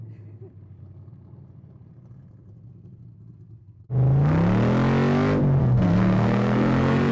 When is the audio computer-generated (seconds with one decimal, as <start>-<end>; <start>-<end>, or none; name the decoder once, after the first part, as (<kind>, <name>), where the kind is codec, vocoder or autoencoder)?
5.6-7.1 (codec, SNAC)